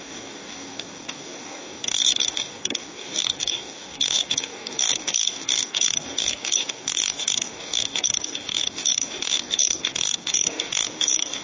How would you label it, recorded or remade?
remade